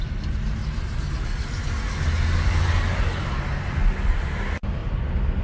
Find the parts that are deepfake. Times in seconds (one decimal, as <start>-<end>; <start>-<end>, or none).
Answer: none